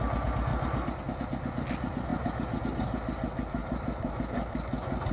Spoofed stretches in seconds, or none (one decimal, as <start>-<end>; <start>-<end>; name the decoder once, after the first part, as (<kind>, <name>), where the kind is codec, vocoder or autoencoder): 0.5-1.0 (vocoder, BigVGAN v2); 3.6-4.2